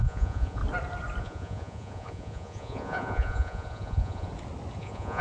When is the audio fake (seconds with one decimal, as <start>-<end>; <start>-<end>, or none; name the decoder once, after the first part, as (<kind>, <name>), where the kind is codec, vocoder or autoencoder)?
0.0-0.6 (vocoder, Vocos); 1.2-4.3; 4.8-5.2